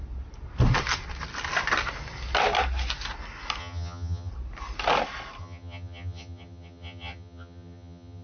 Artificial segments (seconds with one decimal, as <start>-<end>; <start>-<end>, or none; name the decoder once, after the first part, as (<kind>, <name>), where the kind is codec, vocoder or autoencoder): 3.6-4.3 (vocoder, HiFi-GAN); 5.4-8.2